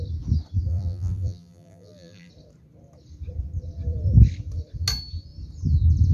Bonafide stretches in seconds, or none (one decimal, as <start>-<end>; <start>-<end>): 0.0-0.7; 2.3-6.1